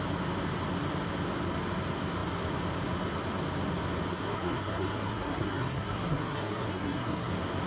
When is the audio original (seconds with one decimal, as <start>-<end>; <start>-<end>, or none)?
0.0-4.1; 7.3-7.7